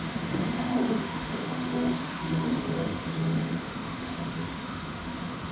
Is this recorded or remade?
remade